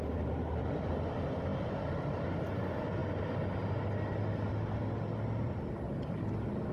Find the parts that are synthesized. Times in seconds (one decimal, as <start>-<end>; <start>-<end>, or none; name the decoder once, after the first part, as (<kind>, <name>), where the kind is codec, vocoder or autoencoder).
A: none